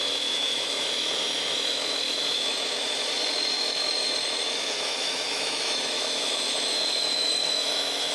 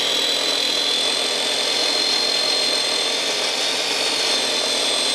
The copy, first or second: first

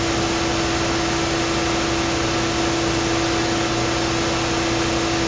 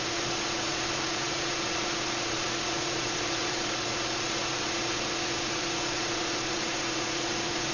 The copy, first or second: second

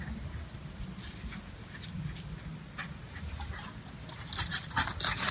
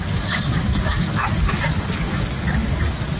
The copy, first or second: second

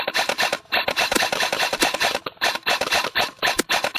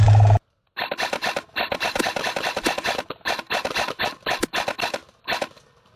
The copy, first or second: first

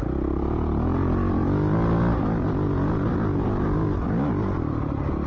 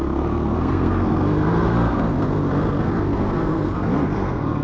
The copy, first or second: second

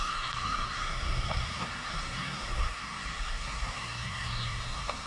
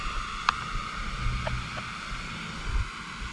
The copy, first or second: first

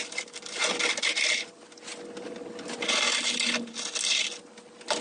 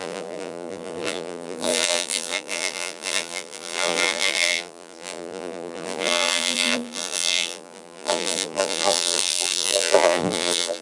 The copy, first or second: second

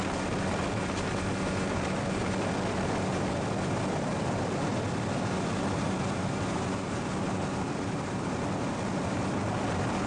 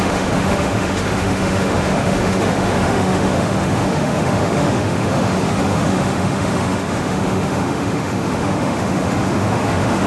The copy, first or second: second